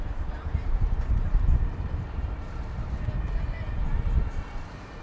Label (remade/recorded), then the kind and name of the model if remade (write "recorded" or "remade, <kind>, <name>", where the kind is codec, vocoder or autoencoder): remade, vocoder, BigVGAN v2